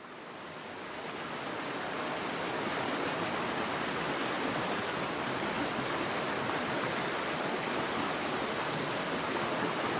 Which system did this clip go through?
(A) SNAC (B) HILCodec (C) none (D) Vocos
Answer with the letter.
C